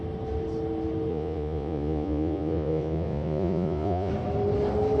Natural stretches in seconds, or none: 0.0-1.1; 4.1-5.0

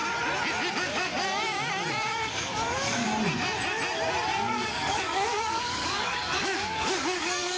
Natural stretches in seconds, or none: 0.0-0.7; 1.1-2.1; 3.1-4.3

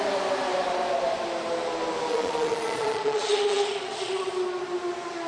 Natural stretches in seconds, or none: 0.0-2.1; 4.3-5.3